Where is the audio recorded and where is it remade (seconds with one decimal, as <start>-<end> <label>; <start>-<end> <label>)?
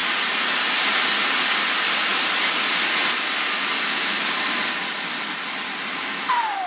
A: 0.0-6.7 recorded